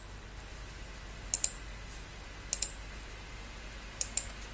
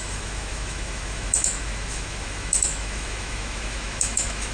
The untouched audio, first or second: first